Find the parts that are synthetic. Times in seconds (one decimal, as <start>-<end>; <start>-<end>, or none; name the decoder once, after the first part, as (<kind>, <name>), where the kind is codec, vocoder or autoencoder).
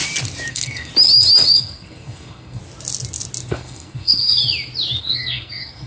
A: 0.5-0.9 (codec, SNAC); 1.6-2.6; 3.5-4.4; 5.0-5.9